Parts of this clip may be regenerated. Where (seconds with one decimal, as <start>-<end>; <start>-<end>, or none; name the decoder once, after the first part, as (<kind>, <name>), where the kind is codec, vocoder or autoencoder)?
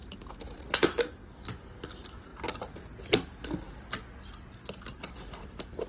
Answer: 0.0-1.0 (vocoder, BigVGAN v2)